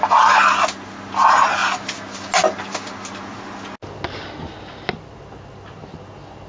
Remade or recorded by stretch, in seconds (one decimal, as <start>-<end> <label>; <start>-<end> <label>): 0.0-6.5 recorded